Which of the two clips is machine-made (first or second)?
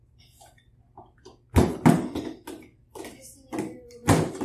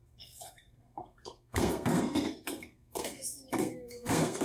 second